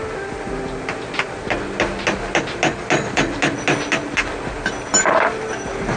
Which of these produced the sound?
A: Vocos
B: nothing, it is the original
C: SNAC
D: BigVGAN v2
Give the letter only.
B